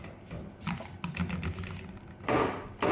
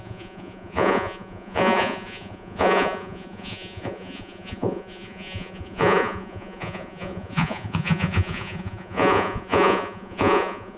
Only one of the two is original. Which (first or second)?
first